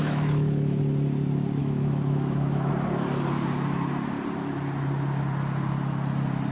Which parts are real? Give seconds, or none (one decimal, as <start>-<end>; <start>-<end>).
0.8-1.6; 2.7-6.5